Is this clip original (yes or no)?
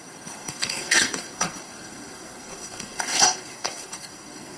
no